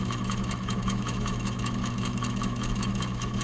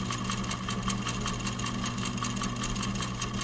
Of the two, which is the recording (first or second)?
second